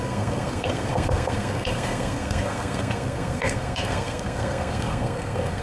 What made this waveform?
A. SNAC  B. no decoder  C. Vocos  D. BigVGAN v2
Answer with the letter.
A